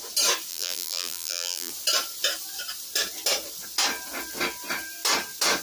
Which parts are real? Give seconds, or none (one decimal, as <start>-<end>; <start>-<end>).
0.0-0.5; 1.7-5.6

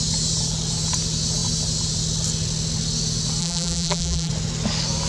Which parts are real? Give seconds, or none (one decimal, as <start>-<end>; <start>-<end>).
0.0-3.4; 4.3-5.1

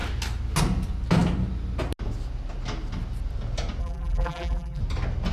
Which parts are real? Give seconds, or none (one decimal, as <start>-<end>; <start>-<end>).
0.0-3.8; 4.8-5.3

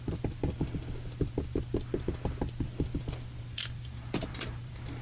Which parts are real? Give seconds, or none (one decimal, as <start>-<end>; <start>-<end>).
0.4-3.4

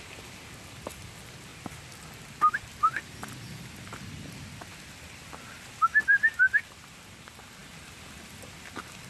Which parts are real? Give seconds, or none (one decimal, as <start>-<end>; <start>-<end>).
1.5-6.6

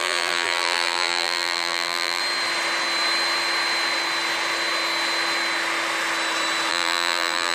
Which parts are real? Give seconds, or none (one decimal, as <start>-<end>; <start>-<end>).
2.2-6.7

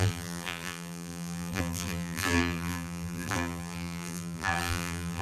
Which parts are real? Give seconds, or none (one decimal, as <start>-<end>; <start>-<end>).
none